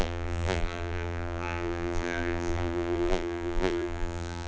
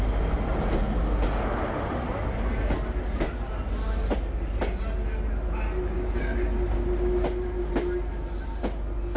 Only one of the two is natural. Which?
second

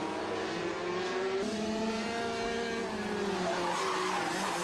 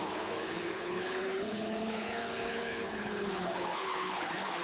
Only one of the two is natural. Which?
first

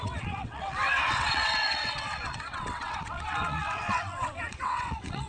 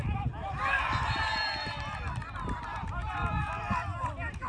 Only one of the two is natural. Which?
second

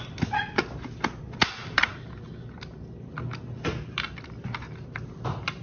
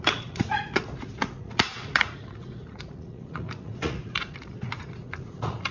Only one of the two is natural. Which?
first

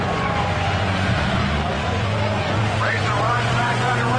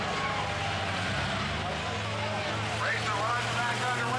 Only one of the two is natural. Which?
second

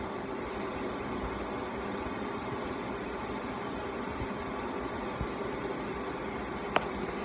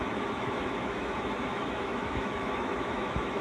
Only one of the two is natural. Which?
first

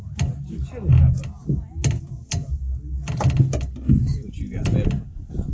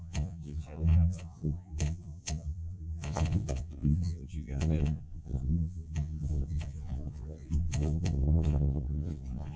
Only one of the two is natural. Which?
first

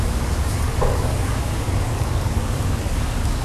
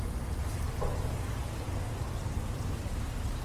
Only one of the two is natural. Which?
second